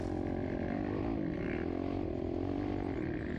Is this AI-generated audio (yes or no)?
no